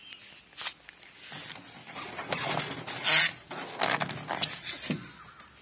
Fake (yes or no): no